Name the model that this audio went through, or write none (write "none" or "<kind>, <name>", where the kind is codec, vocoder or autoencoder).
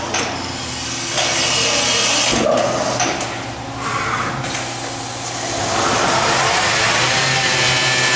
none